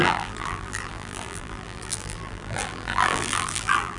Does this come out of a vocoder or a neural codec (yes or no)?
yes